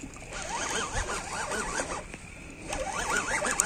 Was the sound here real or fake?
real